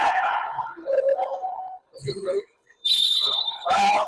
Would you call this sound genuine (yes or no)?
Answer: no